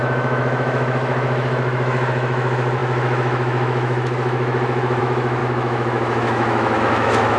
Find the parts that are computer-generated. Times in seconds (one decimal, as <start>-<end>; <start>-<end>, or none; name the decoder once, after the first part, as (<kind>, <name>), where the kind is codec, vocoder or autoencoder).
0.0-7.4 (autoencoder, DAC-VAE)